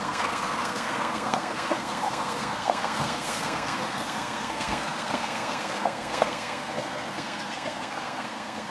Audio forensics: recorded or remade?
remade